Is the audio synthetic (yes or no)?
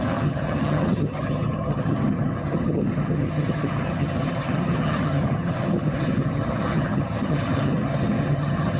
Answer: yes